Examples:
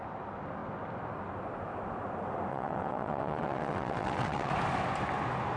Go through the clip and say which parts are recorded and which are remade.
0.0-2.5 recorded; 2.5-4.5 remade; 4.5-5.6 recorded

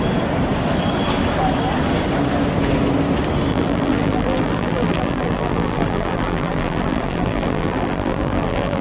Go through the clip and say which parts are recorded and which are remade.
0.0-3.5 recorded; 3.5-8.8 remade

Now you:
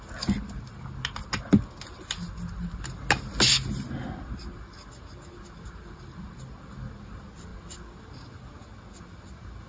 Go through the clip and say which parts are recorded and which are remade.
0.0-9.7 recorded

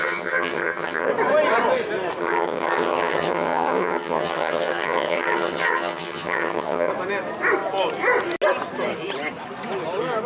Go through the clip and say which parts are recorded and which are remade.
0.0-1.1 remade; 1.1-2.2 recorded; 2.2-6.9 remade; 6.9-10.3 recorded

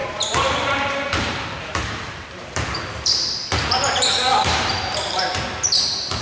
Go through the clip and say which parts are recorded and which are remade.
0.0-3.7 remade; 3.7-4.3 recorded; 4.3-5.4 remade; 5.4-6.2 recorded

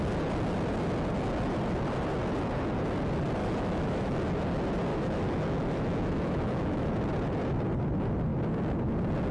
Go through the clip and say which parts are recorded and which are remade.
0.0-3.4 recorded; 3.4-4.2 remade; 4.2-4.9 recorded; 4.9-6.9 remade; 6.9-9.3 recorded